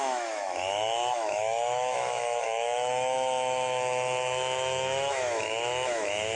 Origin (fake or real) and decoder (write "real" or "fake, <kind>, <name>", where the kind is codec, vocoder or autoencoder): fake, autoencoder, DAC-VAE